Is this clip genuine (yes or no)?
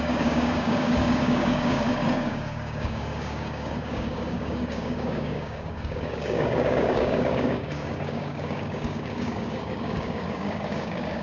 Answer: no